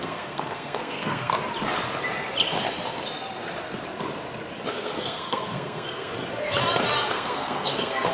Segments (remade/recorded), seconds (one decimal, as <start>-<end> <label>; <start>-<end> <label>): 0.0-1.3 remade; 1.3-4.7 recorded; 4.7-6.1 remade; 6.1-7.1 recorded; 7.1-8.1 remade